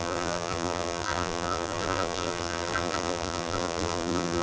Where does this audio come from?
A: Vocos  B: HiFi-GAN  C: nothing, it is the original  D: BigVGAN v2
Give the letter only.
D